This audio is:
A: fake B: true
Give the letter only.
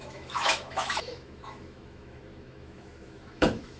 A